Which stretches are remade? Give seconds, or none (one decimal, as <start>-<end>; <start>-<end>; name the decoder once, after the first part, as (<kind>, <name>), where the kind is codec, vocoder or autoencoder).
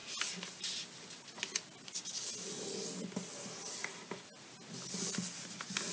none